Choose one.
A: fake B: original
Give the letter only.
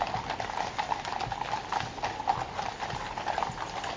B